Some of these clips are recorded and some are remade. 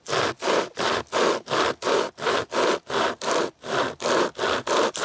remade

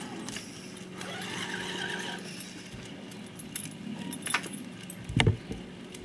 recorded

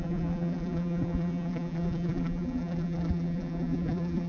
remade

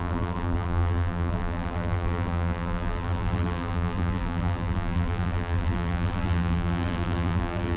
remade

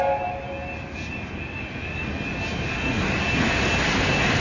recorded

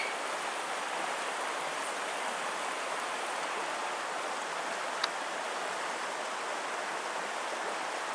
recorded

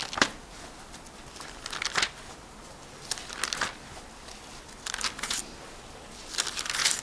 recorded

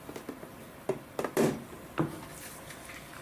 recorded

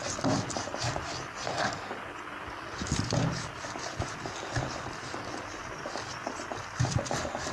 remade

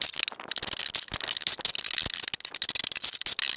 recorded